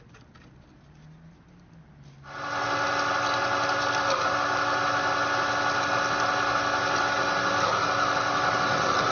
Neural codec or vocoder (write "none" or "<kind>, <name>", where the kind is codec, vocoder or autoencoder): none